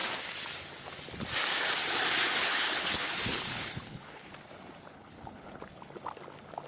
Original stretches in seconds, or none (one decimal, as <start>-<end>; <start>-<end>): 0.0-2.4; 4.3-4.9; 5.6-6.7